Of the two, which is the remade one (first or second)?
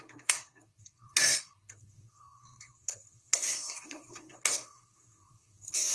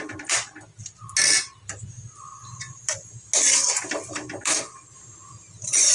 first